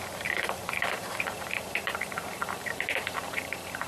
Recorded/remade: remade